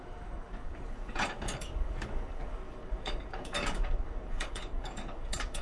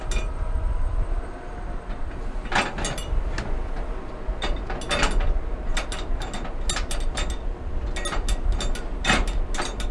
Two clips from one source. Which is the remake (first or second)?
first